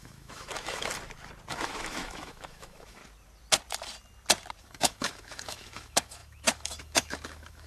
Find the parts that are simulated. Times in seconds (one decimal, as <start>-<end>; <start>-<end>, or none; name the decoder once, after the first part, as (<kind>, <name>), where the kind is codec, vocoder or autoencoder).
0.0-0.9 (autoencoder, DAC-VAE); 1.5-3.0; 4.6-7.7